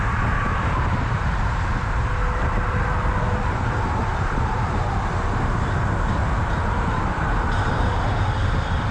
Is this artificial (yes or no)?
yes